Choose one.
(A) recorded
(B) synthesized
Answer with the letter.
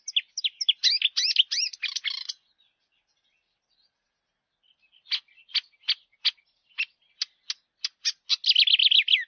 A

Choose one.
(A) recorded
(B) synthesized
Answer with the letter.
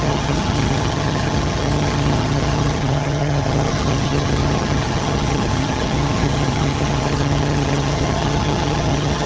B